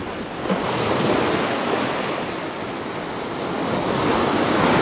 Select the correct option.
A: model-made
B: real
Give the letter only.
B